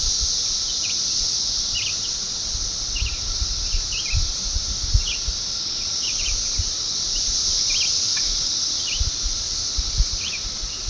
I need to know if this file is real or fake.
real